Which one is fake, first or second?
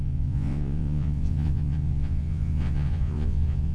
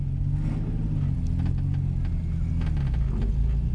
first